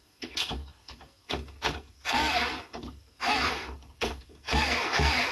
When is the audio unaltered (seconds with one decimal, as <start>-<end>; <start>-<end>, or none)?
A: none